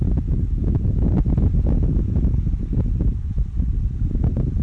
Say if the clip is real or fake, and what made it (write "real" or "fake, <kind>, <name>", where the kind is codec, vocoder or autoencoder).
real